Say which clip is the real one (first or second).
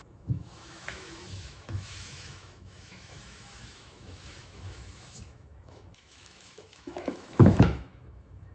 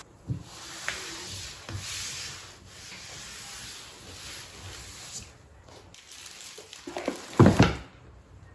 second